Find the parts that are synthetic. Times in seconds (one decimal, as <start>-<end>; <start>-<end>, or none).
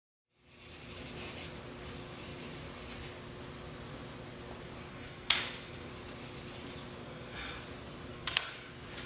4.9-5.9; 7.0-7.6; 8.1-8.7